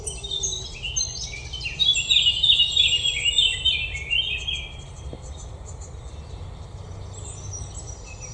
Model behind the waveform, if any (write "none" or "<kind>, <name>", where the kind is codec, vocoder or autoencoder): none